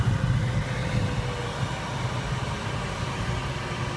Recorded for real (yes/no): yes